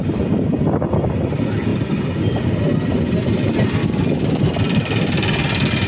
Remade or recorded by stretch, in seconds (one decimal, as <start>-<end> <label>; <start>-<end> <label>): 0.0-3.8 recorded; 3.8-4.4 remade; 4.4-5.9 recorded